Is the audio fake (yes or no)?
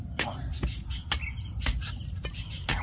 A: no